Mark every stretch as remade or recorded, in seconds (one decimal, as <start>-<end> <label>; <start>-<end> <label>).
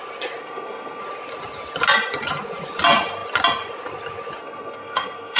0.0-0.4 recorded; 0.4-1.0 remade; 1.0-4.4 recorded; 4.4-5.4 remade